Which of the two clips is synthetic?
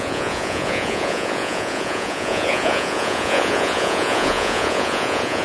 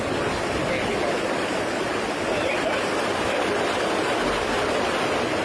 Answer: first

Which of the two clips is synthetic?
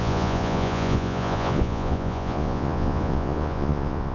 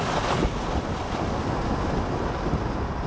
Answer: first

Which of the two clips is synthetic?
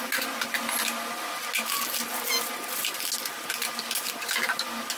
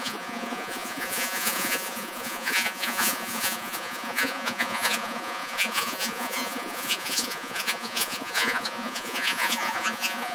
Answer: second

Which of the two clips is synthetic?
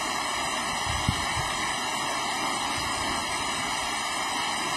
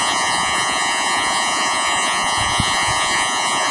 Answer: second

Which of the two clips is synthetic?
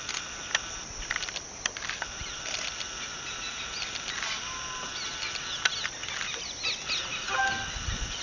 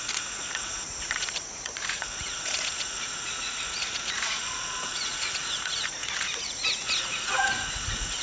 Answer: second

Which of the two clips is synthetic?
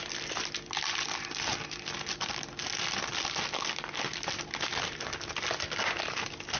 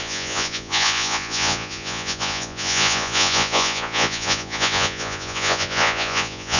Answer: second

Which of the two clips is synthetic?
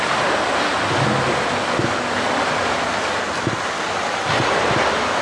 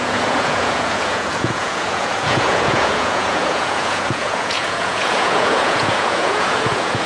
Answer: second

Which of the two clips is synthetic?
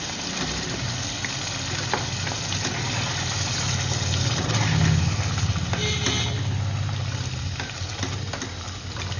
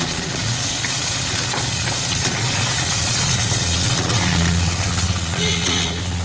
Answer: second